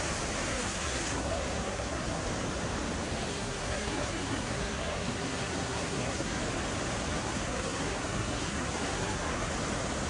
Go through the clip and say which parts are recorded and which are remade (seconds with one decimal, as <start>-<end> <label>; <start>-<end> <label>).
0.0-0.5 recorded; 0.5-2.2 remade; 2.2-3.3 recorded; 3.3-6.4 remade; 6.4-7.1 recorded; 7.1-9.5 remade; 9.5-10.1 recorded